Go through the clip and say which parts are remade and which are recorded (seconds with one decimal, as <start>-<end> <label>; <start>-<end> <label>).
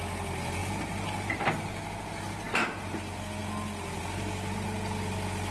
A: 0.0-5.5 recorded